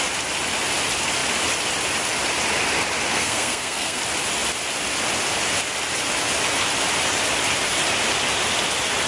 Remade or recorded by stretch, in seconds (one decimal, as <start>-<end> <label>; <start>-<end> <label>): 0.0-3.1 recorded; 3.1-4.0 remade; 4.0-9.1 recorded